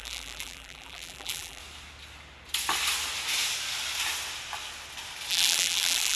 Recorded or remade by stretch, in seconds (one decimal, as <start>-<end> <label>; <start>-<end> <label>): 0.0-1.6 remade; 1.6-5.3 recorded; 5.3-6.2 remade